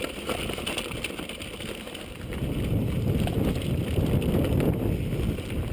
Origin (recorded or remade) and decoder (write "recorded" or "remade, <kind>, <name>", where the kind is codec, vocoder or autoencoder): remade, vocoder, BigVGAN v2